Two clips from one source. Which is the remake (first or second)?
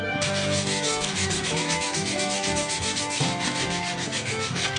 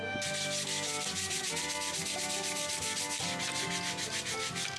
first